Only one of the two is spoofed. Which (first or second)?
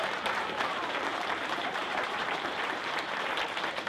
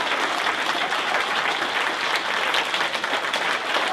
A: first